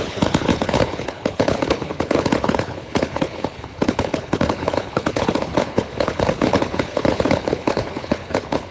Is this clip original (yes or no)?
no